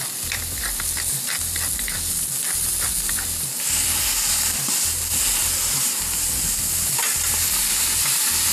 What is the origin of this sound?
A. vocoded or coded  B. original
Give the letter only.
B